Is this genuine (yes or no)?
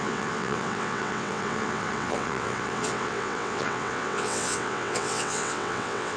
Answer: no